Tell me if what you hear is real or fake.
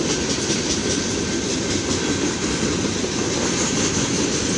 real